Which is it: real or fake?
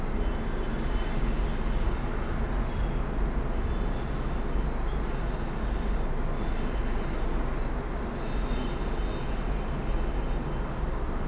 real